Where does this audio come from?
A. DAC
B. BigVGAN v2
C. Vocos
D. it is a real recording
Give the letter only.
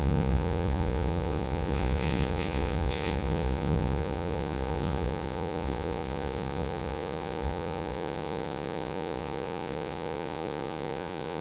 C